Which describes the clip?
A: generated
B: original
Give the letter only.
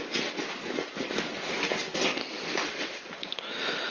B